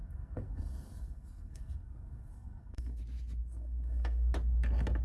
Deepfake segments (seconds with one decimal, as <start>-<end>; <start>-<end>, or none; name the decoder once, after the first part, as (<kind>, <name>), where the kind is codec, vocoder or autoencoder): 0.0-3.0 (codec, SNAC); 3.4-4.3